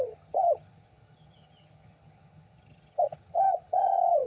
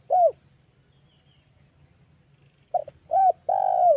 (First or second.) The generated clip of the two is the first